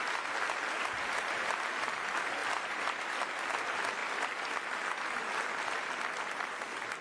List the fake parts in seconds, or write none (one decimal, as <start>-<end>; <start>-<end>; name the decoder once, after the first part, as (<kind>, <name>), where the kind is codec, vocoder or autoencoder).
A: 2.4-3.3 (vocoder, BigVGAN v2)